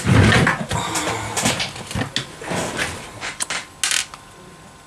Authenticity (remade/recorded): recorded